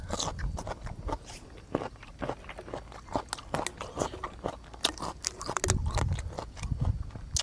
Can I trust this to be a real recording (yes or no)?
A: yes